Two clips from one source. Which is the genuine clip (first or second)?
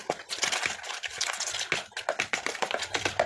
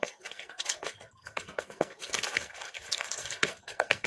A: first